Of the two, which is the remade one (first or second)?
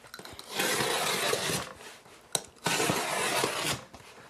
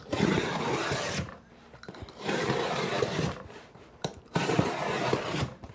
second